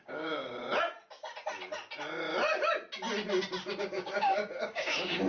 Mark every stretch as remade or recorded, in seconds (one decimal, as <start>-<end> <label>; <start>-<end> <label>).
0.0-0.6 remade; 0.6-3.8 recorded; 3.8-5.3 remade